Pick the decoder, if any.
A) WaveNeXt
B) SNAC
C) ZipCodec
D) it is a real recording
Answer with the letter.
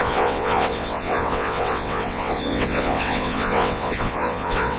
A